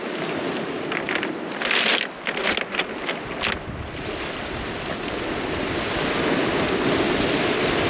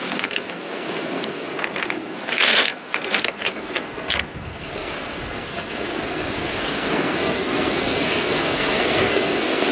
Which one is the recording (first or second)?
first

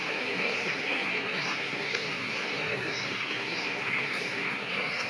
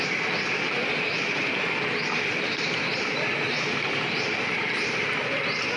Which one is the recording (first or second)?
second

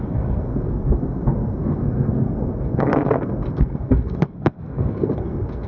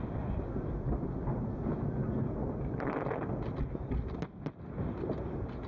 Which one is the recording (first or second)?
second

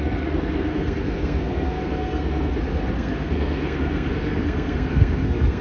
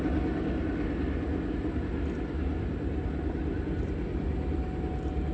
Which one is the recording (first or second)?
second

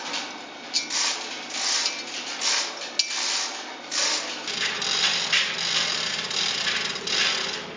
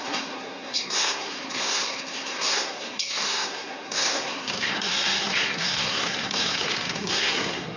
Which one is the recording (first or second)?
first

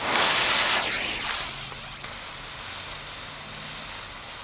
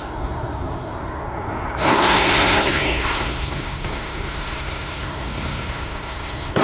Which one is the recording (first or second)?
first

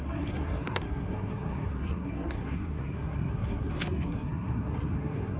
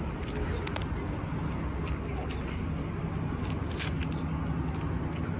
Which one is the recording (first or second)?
second